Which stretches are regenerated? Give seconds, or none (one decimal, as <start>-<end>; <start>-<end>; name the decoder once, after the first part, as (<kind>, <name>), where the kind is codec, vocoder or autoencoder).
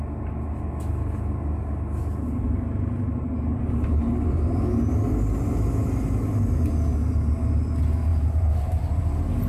3.5-4.0 (vocoder, BigVGAN v2); 8.1-9.0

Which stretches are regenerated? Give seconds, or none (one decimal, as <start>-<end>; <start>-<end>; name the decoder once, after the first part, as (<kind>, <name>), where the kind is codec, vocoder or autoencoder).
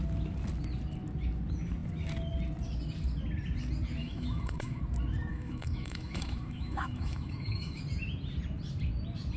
4.0-4.8 (autoencoder, DAC-VAE); 5.3-7.8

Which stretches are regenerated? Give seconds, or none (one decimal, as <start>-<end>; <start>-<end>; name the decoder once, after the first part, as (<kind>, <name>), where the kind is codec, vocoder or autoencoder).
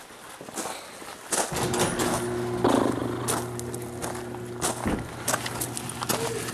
none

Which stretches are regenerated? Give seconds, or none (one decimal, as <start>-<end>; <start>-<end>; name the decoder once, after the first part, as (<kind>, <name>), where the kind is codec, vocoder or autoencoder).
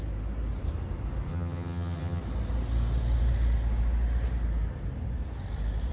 1.3-2.2 (vocoder, HiFi-GAN)